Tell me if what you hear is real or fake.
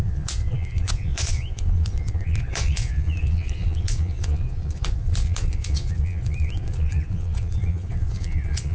fake